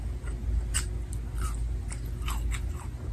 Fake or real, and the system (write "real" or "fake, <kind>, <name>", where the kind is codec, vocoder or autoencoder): real